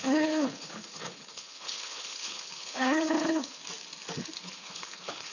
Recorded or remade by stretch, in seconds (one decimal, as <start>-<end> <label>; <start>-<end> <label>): 0.0-3.6 remade; 3.6-4.4 recorded; 4.4-5.3 remade